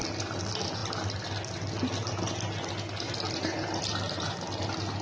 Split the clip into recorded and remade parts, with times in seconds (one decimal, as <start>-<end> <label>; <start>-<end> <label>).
0.0-5.0 recorded